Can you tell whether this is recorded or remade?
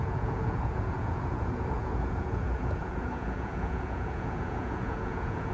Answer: remade